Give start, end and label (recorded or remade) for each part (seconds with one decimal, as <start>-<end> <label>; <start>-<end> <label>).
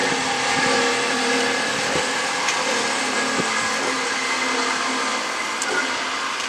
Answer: 0.0-3.9 remade; 3.9-6.5 recorded